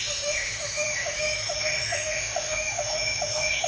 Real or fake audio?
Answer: fake